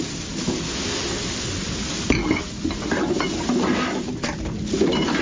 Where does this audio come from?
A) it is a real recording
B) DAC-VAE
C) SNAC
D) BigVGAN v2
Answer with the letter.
A